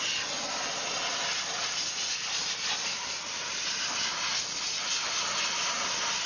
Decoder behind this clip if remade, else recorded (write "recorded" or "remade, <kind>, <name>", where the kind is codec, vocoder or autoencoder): recorded